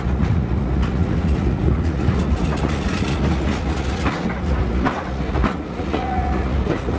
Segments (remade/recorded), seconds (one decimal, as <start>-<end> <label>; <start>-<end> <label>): 0.0-7.0 remade

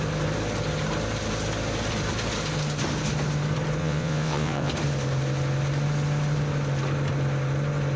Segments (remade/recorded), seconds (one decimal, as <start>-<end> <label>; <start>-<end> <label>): 0.0-3.8 recorded; 3.8-4.7 remade; 4.7-8.0 recorded